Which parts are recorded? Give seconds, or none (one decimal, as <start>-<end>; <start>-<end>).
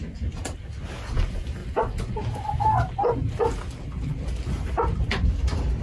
1.6-5.1